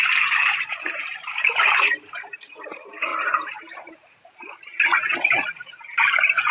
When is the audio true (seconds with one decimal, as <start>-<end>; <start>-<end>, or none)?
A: none